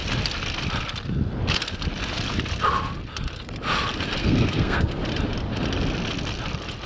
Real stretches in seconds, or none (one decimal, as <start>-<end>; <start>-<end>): 0.0-4.2; 5.0-6.9